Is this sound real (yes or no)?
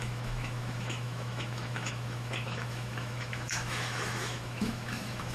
no